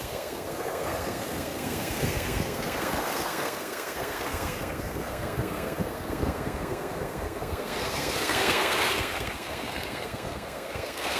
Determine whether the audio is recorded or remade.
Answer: remade